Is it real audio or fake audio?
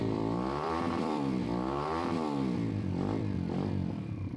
fake